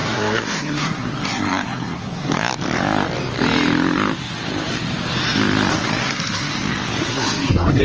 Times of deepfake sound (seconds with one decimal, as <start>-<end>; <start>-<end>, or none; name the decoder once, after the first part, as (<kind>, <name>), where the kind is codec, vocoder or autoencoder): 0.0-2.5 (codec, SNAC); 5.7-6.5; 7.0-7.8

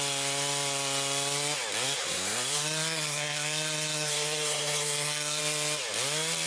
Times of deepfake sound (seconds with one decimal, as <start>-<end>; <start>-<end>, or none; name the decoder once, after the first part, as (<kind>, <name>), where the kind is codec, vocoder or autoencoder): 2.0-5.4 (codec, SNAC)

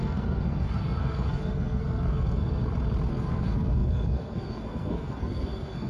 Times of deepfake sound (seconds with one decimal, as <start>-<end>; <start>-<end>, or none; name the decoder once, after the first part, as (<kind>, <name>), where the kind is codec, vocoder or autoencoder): 0.0-2.6 (codec, SNAC); 3.1-5.9